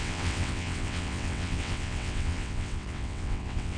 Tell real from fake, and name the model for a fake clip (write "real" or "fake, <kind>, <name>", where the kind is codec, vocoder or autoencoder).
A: fake, vocoder, WaveNeXt